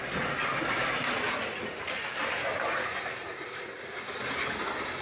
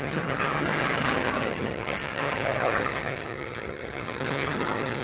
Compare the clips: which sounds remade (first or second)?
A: second